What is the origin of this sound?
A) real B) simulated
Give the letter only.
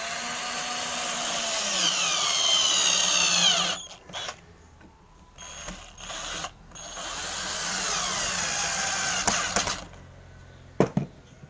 A